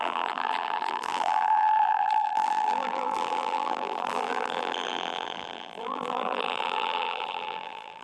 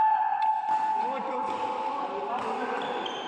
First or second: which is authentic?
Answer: second